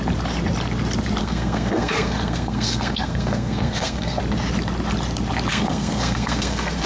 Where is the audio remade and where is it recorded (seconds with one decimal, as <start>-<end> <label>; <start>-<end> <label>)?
0.0-1.2 recorded; 1.2-4.2 remade; 4.2-5.5 recorded; 5.5-6.9 remade